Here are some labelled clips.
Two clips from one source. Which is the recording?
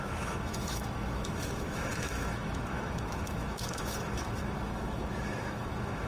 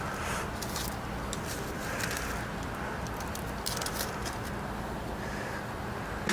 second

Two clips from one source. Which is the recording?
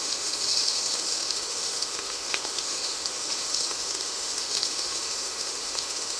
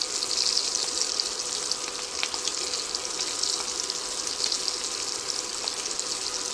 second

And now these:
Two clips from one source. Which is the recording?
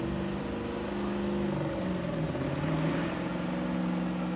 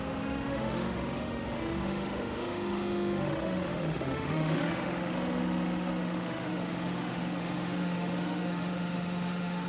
first